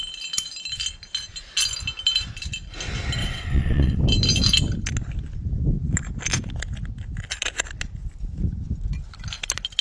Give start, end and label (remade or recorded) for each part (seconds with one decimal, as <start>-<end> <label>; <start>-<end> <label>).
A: 0.0-3.2 recorded; 3.2-4.0 remade; 4.0-9.8 recorded